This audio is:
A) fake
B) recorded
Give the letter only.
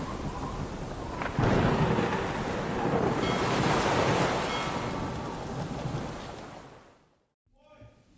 B